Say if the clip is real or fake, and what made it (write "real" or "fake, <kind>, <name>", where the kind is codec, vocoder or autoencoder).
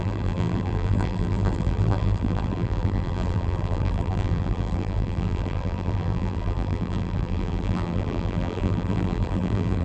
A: fake, vocoder, BigVGAN v2